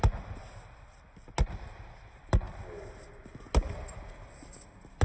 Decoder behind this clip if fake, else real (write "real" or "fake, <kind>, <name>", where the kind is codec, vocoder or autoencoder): real